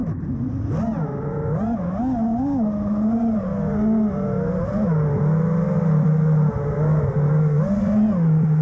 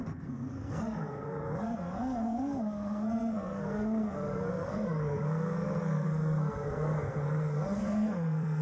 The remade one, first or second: second